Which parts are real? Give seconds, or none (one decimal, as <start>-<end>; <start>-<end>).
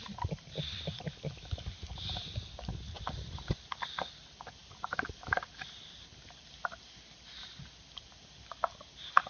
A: 0.0-4.6; 6.0-9.3